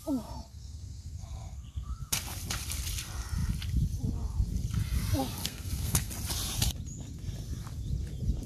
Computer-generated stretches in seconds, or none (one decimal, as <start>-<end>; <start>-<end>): 0.5-2.2; 5.4-6.1